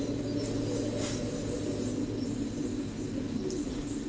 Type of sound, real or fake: real